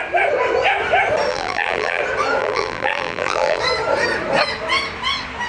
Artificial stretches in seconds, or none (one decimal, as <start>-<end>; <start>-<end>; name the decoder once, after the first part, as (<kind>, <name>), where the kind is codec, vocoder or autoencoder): 1.3-2.0 (vocoder, BigVGAN v2); 2.4-3.6